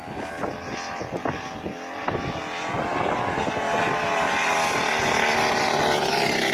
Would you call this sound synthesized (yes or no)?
no